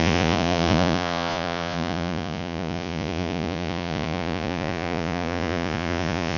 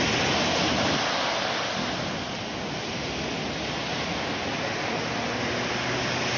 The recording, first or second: second